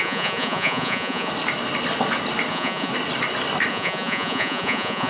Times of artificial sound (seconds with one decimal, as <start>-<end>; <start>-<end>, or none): 0.0-1.3; 2.5-2.9; 3.7-5.1